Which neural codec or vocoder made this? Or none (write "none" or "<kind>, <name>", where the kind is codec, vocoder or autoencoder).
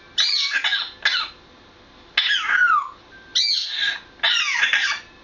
none